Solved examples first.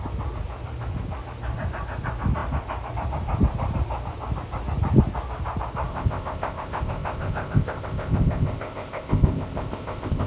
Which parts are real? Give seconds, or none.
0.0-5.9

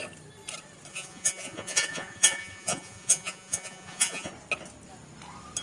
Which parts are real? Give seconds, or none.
0.0-0.9; 4.3-5.6

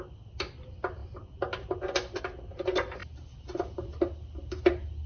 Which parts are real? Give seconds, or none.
0.0-5.1